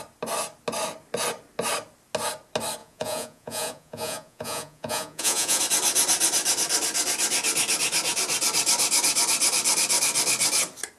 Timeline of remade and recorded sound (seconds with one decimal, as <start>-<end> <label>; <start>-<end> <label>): 0.0-2.8 recorded; 2.8-5.6 remade; 5.6-11.0 recorded